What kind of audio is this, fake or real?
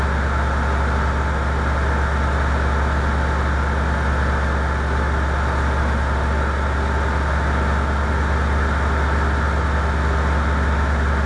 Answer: real